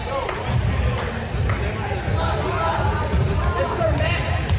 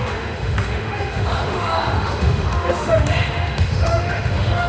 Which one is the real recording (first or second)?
first